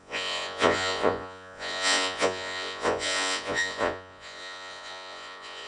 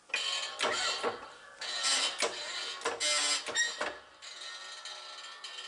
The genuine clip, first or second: second